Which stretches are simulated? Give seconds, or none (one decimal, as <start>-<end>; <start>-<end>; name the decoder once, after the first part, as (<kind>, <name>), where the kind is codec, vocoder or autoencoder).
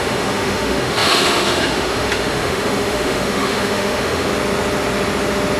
0.0-4.3 (autoencoder, DAC-VAE)